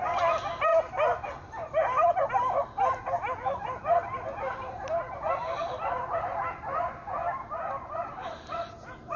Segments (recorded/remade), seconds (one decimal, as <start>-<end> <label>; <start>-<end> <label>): 0.0-9.2 recorded